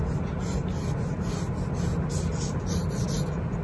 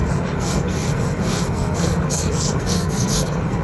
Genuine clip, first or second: first